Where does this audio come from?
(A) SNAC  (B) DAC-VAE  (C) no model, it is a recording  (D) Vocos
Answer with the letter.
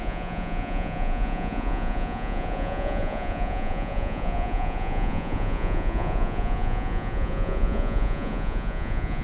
D